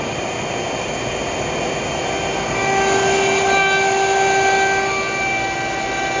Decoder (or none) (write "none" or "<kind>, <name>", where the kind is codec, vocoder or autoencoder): none